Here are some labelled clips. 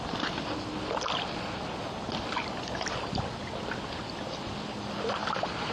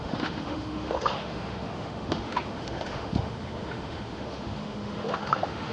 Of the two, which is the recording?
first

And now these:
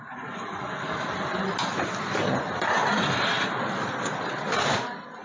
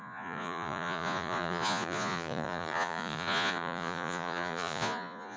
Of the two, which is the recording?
first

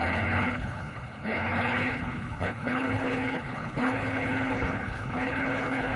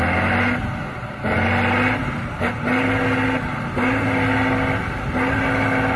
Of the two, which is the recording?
second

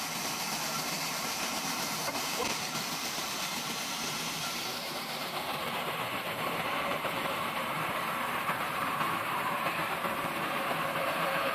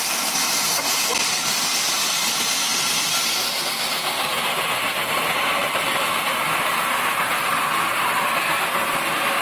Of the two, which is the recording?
second